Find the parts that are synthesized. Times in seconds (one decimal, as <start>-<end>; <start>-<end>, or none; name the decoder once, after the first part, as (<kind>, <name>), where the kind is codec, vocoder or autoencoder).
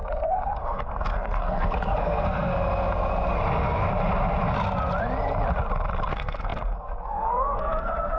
0.0-2.5 (codec, SNAC); 6.1-8.2